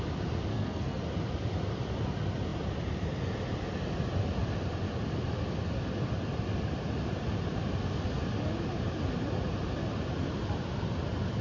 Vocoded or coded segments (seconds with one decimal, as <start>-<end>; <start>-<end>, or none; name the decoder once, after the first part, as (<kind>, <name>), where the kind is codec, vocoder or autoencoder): 0.5-1.0 (codec, SNAC)